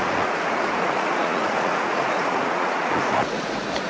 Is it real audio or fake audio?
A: fake